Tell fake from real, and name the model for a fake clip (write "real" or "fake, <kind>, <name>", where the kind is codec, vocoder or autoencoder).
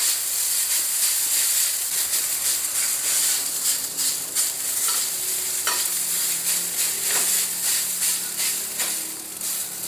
real